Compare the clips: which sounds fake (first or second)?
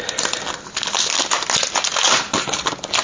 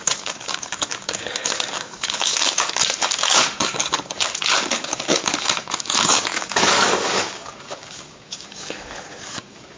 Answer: second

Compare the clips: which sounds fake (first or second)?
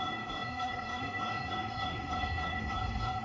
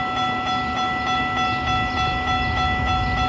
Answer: first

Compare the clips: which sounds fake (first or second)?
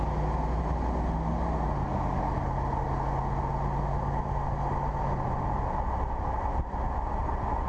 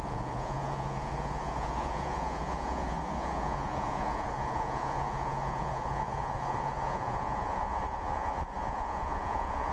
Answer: second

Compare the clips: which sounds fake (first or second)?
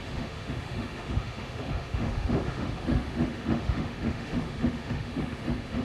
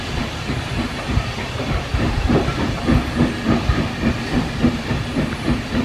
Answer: first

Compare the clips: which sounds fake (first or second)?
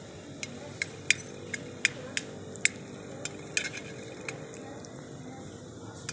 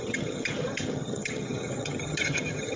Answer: second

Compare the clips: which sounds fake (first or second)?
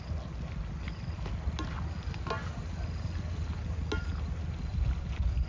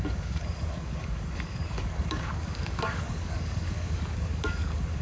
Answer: second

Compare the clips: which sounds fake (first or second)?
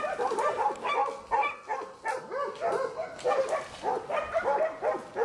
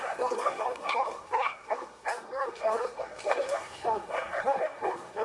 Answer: second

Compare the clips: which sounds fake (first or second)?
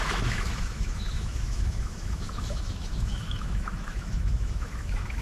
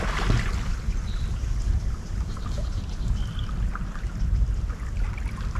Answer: first